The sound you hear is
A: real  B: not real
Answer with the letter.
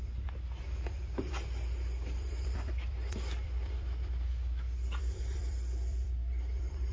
B